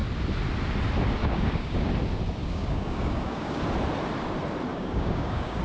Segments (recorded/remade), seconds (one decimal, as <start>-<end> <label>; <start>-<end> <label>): 0.0-1.2 recorded; 1.2-1.9 remade; 1.9-2.4 recorded; 2.4-3.6 remade; 3.6-4.7 recorded; 4.7-5.6 remade